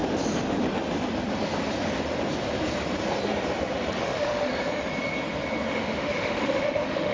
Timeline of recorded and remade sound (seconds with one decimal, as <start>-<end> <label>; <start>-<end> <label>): 0.0-4.0 recorded; 4.0-4.5 remade; 4.5-5.7 recorded; 5.7-7.1 remade